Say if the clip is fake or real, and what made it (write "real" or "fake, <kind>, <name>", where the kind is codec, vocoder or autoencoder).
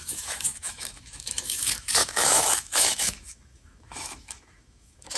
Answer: fake, autoencoder, DAC-VAE